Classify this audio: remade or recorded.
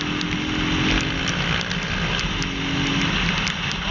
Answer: recorded